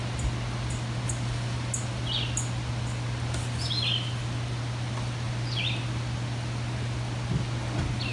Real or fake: real